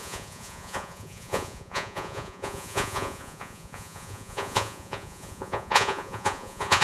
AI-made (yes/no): yes